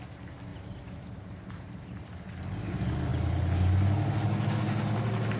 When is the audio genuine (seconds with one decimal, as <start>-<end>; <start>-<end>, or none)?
0.0-0.5; 2.1-5.4